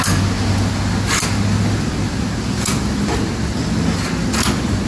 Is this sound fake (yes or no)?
no